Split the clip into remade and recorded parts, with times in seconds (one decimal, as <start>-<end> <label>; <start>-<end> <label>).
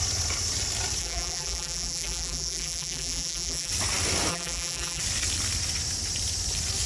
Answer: 0.0-1.0 recorded; 1.0-3.7 remade; 3.7-4.3 recorded; 4.3-5.0 remade; 5.0-6.9 recorded